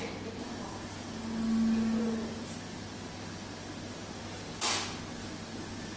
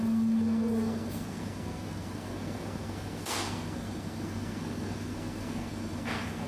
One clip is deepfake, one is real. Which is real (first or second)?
first